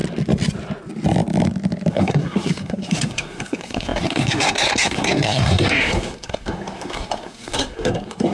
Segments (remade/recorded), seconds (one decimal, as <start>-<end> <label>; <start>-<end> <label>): 0.0-1.9 recorded; 1.9-8.3 remade